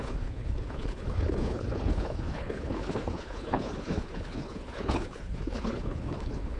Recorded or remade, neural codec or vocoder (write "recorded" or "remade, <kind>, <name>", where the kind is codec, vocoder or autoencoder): remade, codec, HILCodec